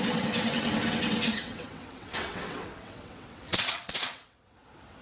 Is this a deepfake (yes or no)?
yes